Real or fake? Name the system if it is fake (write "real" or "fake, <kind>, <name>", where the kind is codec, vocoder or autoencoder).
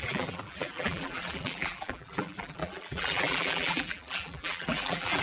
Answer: fake, vocoder, BigVGAN v2